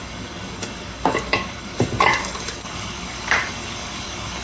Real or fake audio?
fake